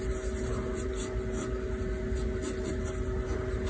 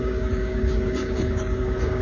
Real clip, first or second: first